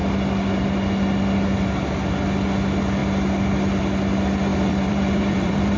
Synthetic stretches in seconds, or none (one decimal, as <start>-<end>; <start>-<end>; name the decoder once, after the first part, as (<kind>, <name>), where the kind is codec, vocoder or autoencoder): 4.5-5.8 (vocoder, BigVGAN v2)